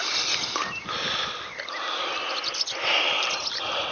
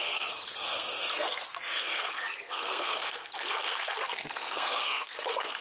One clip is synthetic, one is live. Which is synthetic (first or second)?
second